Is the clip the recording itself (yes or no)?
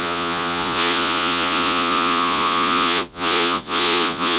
no